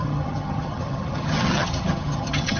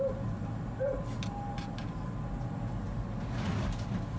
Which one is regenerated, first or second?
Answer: first